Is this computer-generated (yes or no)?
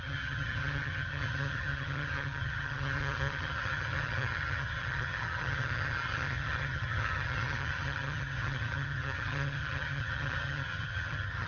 yes